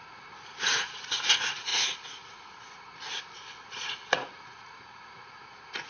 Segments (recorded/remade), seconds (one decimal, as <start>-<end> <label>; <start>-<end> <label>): 0.0-5.9 remade